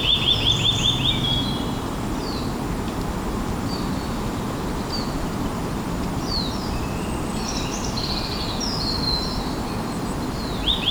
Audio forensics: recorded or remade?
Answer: recorded